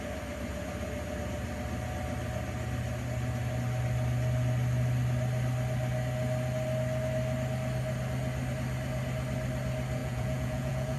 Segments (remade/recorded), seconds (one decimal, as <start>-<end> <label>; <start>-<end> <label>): 0.0-10.0 recorded; 10.0-11.0 remade